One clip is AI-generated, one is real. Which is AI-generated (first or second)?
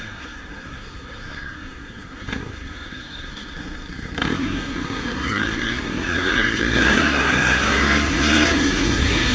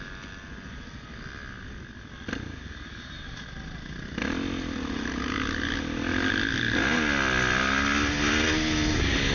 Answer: first